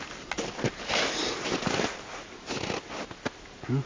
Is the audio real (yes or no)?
yes